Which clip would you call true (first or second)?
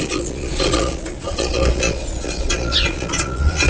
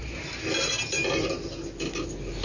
second